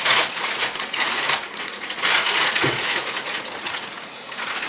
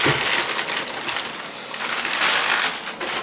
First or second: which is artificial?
first